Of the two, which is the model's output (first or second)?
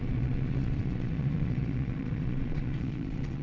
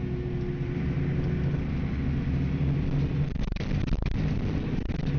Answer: first